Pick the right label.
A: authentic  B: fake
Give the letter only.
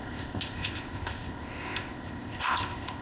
B